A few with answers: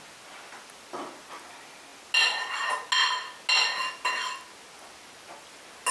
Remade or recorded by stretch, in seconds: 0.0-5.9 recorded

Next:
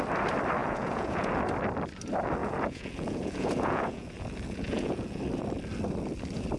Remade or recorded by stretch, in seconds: 0.0-0.6 recorded; 0.6-1.3 remade; 1.3-2.4 recorded; 2.4-5.2 remade; 5.2-6.6 recorded

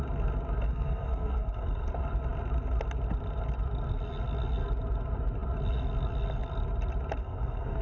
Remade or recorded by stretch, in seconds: 0.0-0.7 recorded; 0.7-1.9 remade; 1.9-7.2 recorded; 7.2-7.8 remade

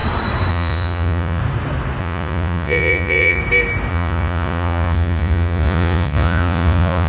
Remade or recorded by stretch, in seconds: 0.0-0.5 recorded; 0.5-1.4 remade; 1.4-2.0 recorded; 2.0-3.4 remade; 3.4-3.9 recorded; 3.9-7.1 remade

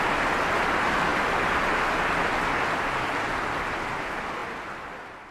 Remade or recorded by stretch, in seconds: 0.0-5.3 recorded

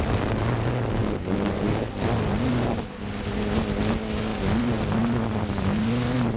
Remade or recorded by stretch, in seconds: 0.0-6.4 recorded

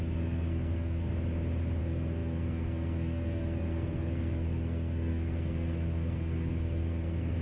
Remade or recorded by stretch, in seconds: 0.0-1.1 remade; 1.1-1.8 recorded; 1.8-7.4 remade

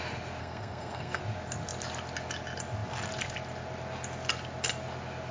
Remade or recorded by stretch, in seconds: 0.0-0.4 recorded; 0.4-1.2 remade; 1.2-5.3 recorded